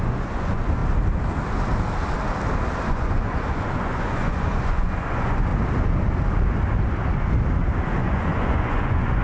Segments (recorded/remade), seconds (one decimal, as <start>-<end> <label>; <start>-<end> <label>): 0.0-0.8 remade; 0.8-2.9 recorded; 2.9-5.5 remade; 5.5-8.0 recorded; 8.0-9.2 remade